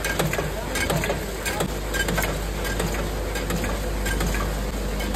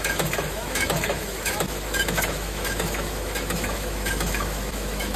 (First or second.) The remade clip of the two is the second